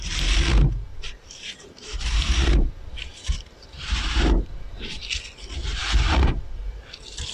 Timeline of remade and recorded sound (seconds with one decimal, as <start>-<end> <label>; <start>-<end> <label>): 0.0-0.9 recorded; 0.9-5.1 remade; 5.1-5.7 recorded; 5.7-6.8 remade; 6.8-7.3 recorded